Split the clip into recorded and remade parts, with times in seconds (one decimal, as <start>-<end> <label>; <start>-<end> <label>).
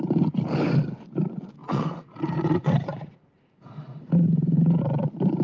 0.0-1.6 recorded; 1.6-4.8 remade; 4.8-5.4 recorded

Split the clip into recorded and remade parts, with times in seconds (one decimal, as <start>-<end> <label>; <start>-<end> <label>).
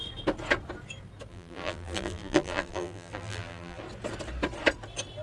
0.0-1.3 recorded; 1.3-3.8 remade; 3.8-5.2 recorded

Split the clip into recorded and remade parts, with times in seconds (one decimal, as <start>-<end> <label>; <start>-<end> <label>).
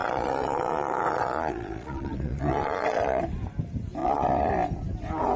0.0-3.2 remade; 3.2-4.0 recorded; 4.0-4.5 remade; 4.5-5.4 recorded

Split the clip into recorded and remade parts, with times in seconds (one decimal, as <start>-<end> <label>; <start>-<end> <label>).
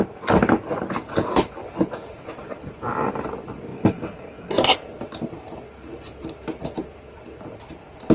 0.0-3.7 recorded; 3.7-4.5 remade; 4.5-8.1 recorded